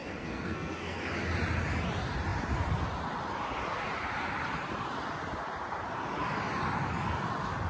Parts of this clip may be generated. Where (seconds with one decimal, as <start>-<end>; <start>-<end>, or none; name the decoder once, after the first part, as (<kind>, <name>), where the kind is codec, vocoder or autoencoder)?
0.0-1.0 (codec, SNAC)